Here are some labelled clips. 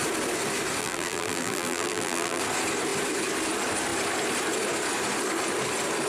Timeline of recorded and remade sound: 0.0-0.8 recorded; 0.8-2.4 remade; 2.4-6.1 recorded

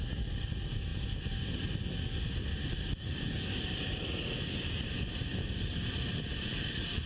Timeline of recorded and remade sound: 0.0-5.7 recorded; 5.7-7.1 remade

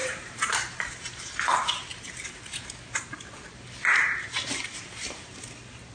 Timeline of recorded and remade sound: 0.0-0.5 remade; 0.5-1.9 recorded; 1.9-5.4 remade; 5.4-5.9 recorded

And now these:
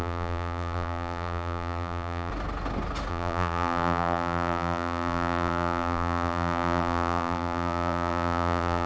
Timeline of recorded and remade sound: 0.0-2.3 remade; 2.3-3.1 recorded; 3.1-8.9 remade

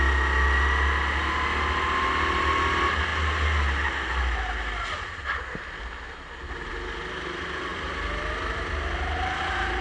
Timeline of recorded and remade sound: 0.0-7.7 recorded; 7.7-9.4 remade; 9.4-9.8 recorded